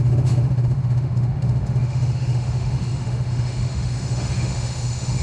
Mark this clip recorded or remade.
remade